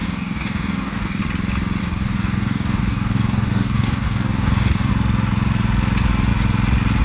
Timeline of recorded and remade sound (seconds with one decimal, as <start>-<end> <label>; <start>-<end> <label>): 0.0-1.2 remade; 1.2-1.8 recorded; 1.8-4.9 remade; 4.9-7.0 recorded